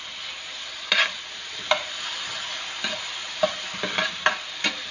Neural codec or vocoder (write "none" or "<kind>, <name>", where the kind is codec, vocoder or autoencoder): none